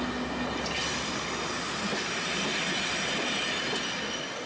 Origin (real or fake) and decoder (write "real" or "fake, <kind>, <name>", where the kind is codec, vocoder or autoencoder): real